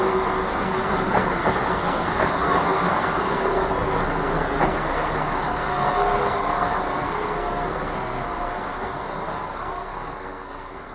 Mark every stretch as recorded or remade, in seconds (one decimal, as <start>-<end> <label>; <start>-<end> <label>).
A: 0.0-10.9 remade